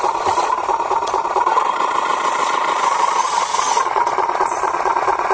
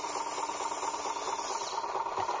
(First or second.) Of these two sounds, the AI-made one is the first